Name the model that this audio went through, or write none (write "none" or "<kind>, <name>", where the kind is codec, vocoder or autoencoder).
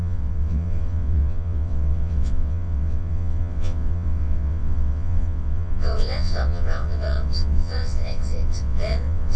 vocoder, WaveNeXt